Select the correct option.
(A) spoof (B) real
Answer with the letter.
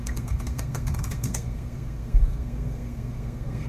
A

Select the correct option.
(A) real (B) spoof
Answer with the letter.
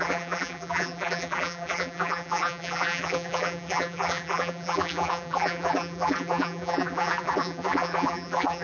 B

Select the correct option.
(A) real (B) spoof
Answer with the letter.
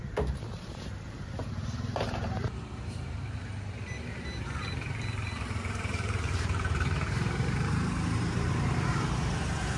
B